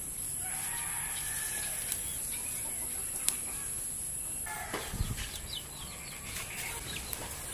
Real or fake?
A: real